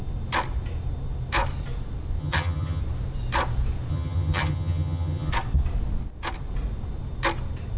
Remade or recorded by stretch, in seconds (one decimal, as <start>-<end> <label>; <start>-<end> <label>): 0.0-2.2 recorded; 2.2-2.8 remade; 2.8-3.9 recorded; 3.9-5.3 remade; 5.3-7.8 recorded